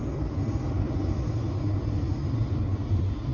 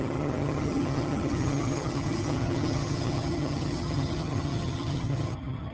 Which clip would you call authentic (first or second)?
first